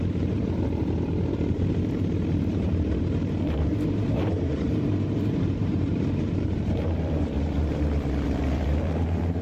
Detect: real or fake fake